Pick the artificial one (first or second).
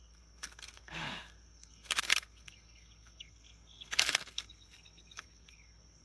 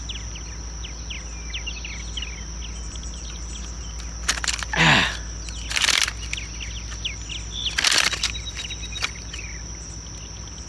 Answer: first